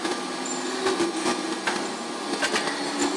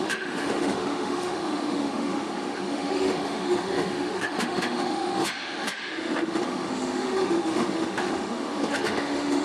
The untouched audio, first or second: first